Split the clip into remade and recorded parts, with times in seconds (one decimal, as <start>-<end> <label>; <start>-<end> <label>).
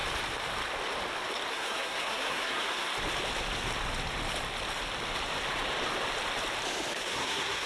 0.0-1.5 recorded; 1.5-2.9 remade; 2.9-7.0 recorded; 7.0-7.7 remade